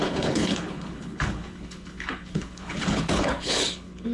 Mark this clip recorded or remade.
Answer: remade